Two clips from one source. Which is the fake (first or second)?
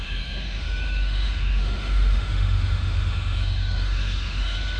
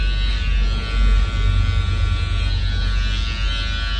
first